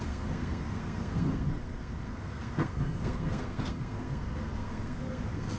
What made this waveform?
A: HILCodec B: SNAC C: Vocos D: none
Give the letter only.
B